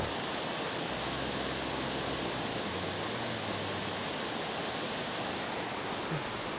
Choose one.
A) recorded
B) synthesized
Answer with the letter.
A